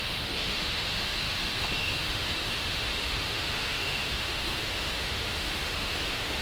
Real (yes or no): no